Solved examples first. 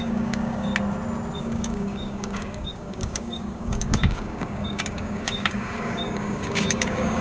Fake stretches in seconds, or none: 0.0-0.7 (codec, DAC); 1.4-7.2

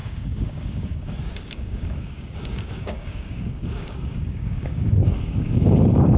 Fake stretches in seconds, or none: 0.0-6.2 (codec, DAC)